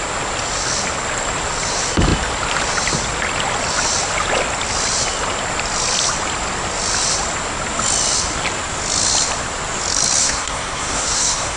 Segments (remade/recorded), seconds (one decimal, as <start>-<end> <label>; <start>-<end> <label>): 0.0-10.2 recorded; 10.2-11.6 remade